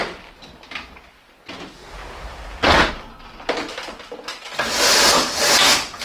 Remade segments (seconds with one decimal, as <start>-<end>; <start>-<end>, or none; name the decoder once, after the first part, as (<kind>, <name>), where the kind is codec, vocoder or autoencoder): none